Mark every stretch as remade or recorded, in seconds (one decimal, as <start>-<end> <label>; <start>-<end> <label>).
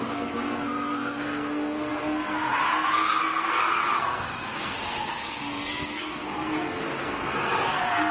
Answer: 0.0-8.1 remade